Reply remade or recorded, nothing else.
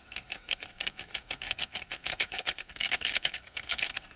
remade